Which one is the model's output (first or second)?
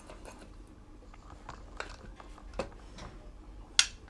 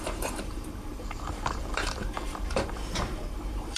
second